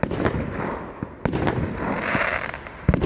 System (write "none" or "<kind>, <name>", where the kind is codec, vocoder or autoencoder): none